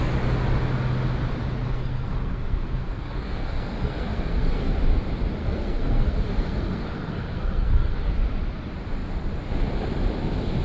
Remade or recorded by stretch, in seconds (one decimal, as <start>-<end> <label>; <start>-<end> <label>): 0.0-1.6 recorded; 1.6-4.8 remade; 4.8-5.4 recorded; 5.4-8.1 remade; 8.1-10.6 recorded